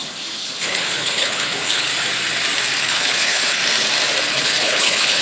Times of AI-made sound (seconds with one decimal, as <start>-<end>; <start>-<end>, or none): 0.0-1.9; 2.8-3.6; 4.3-5.2